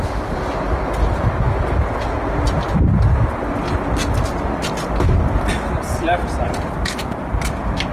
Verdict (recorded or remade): recorded